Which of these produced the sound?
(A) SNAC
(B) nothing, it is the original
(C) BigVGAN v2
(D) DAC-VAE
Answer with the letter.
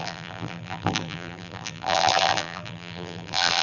C